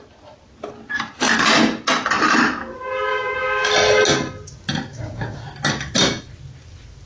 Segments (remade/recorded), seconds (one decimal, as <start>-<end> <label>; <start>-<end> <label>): 0.0-3.1 recorded; 3.1-3.7 remade; 3.7-4.9 recorded; 4.9-5.4 remade; 5.4-7.1 recorded